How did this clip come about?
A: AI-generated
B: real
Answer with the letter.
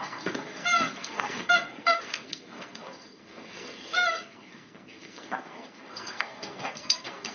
A